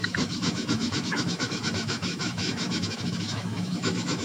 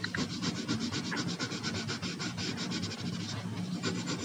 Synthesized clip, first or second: first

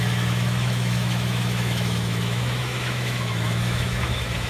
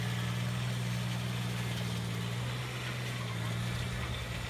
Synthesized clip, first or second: first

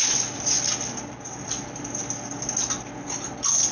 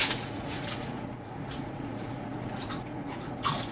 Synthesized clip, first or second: second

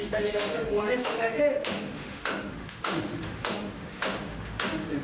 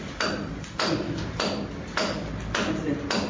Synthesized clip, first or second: first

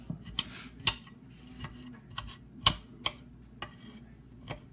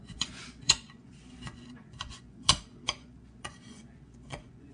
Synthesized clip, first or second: second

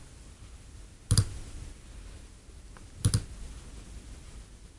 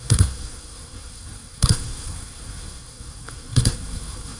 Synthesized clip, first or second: second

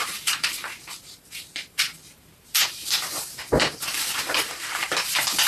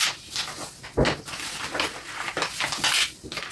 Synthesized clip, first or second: first